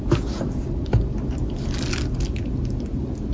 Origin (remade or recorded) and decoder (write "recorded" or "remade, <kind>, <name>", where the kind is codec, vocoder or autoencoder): recorded